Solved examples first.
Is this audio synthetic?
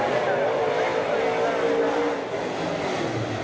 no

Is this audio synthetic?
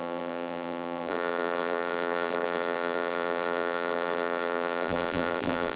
yes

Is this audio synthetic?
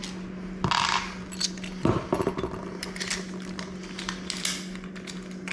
no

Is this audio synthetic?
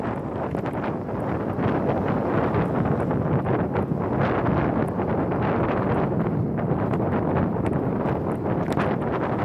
no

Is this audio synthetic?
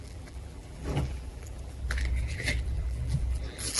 yes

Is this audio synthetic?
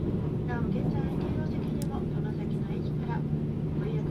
no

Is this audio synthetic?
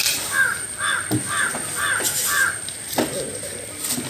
no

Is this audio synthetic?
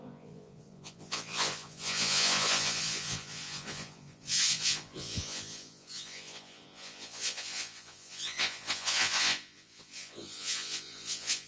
yes